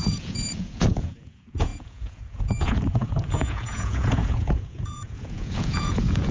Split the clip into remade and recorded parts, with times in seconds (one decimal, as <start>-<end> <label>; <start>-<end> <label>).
0.0-6.3 remade